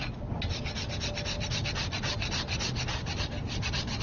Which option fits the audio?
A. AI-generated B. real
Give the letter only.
B